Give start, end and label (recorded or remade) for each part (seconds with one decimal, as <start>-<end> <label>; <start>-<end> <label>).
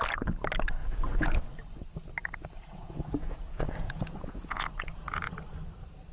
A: 0.0-0.8 recorded; 0.8-1.4 remade; 1.4-2.2 recorded; 2.2-5.3 remade; 5.3-6.1 recorded